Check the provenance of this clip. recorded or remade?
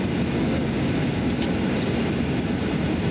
recorded